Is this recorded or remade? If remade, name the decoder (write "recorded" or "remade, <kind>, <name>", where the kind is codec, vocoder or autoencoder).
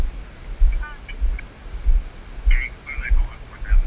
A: recorded